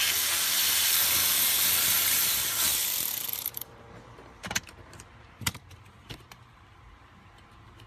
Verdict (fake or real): fake